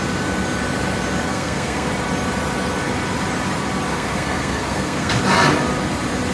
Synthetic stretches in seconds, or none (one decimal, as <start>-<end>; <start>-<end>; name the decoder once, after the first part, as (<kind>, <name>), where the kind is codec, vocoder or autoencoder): 1.3-1.9 (codec, SNAC); 3.9-5.2

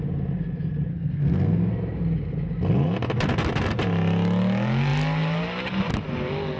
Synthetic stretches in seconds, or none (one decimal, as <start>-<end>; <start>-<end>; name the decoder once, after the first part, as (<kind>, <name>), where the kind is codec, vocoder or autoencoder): 0.9-1.7 (codec, SNAC)

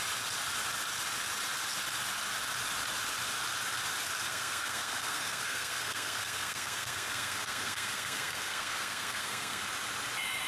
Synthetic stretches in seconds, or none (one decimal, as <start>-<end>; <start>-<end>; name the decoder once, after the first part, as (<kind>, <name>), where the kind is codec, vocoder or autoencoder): 4.3-9.6 (codec, SNAC)

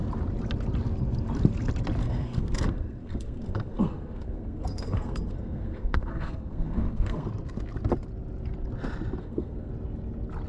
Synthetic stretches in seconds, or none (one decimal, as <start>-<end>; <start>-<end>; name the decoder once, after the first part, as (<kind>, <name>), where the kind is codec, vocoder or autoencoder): 2.0-7.3 (codec, SNAC); 9.2-9.7

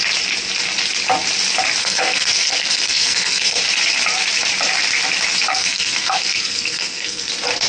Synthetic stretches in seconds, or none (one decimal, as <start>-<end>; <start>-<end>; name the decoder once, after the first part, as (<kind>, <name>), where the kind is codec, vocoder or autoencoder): 1.8-3.6 (codec, SNAC); 5.5-7.3

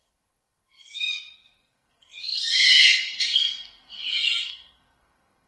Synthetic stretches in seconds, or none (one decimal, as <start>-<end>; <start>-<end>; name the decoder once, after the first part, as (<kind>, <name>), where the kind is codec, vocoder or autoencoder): 0.0-5.5 (codec, SNAC)

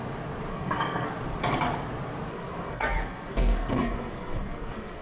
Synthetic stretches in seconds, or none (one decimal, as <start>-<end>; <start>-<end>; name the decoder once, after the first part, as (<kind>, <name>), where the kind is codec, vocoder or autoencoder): 0.5-1.1 (codec, SNAC); 2.3-5.0